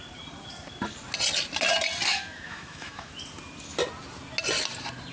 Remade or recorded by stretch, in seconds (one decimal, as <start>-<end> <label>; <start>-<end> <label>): 0.0-2.1 recorded; 2.1-3.1 remade; 3.1-5.1 recorded